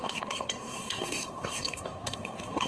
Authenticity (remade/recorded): remade